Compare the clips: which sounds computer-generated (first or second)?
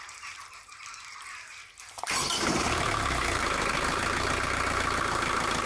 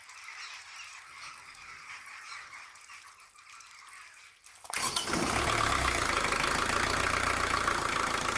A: first